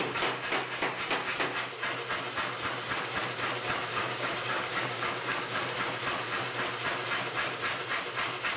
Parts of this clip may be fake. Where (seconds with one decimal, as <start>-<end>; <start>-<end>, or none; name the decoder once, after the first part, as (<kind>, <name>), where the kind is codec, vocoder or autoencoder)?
3.9-5.8 (codec, DAC)